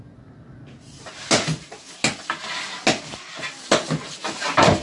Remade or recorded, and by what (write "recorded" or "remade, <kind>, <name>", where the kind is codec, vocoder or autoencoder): recorded